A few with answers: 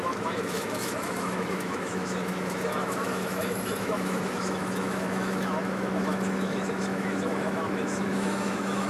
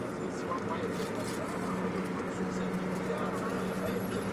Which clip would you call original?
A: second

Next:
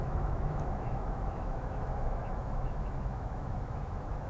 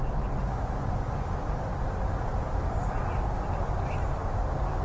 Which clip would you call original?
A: second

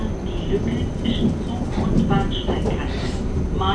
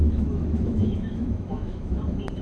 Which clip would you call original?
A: first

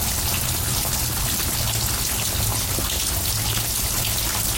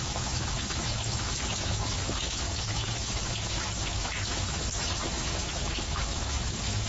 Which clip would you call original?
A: first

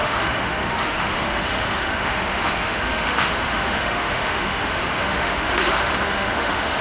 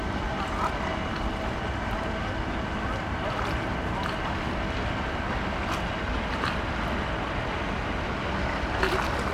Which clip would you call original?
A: second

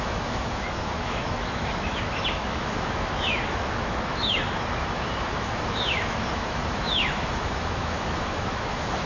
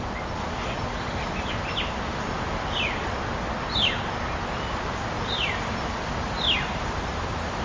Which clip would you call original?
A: second